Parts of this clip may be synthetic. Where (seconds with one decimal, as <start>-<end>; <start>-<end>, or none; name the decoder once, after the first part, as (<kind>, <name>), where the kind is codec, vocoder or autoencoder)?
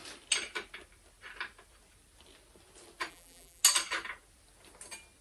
3.1-3.6 (vocoder, BigVGAN v2)